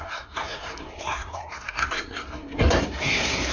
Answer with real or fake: fake